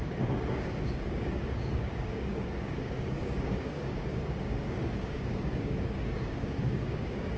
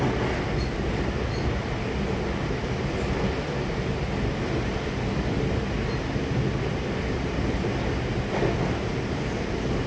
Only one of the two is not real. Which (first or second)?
first